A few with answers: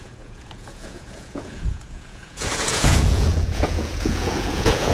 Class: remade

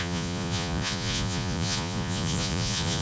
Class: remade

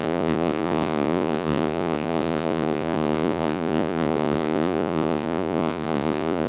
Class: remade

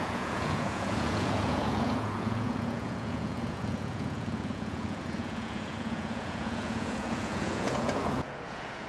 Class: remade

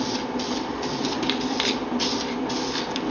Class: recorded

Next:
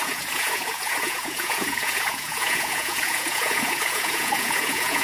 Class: remade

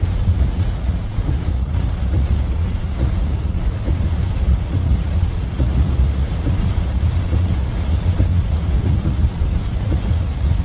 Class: remade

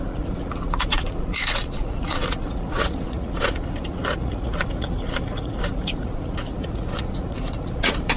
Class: remade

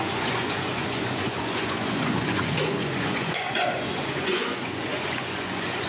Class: remade